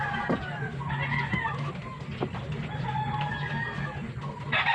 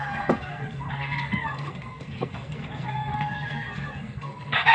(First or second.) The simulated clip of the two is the second